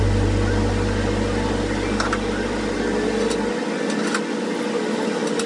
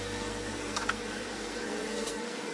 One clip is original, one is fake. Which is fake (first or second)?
second